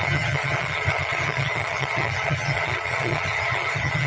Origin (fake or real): fake